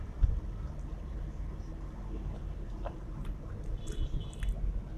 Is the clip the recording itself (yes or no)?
yes